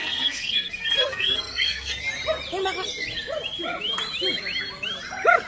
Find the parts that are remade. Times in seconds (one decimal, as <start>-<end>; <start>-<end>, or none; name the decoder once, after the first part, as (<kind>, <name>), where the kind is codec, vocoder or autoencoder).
0.0-2.0 (codec, SNAC)